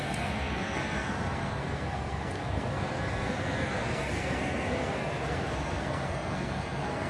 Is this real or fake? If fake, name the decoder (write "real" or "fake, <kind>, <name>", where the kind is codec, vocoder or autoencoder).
fake, codec, SNAC